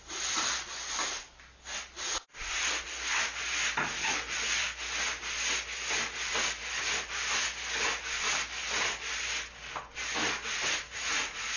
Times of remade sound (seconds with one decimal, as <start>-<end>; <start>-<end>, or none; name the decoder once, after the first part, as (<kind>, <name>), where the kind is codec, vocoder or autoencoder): 10.5-11.6 (vocoder, Vocos)